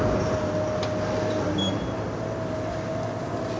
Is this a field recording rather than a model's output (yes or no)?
yes